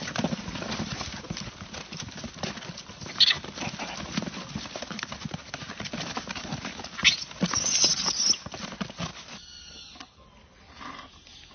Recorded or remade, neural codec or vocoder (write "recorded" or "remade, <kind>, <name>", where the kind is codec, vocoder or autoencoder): recorded